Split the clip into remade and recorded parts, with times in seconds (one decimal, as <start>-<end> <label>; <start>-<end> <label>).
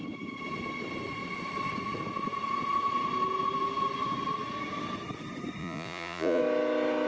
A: 0.0-5.6 recorded; 5.6-6.4 remade; 6.4-7.1 recorded